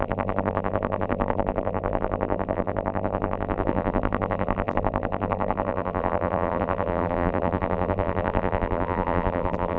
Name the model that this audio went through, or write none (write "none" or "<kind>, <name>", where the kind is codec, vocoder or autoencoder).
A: vocoder, BigVGAN v2